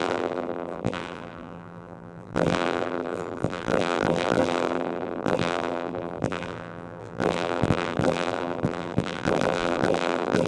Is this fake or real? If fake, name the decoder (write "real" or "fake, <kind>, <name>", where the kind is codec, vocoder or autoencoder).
fake, vocoder, BigVGAN v2